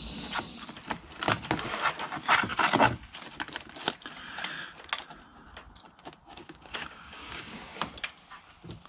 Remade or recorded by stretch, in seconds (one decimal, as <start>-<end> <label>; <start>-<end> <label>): 0.0-6.2 recorded; 6.2-7.8 remade; 7.8-8.9 recorded